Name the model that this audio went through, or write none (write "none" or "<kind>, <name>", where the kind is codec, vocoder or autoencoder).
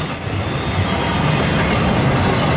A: none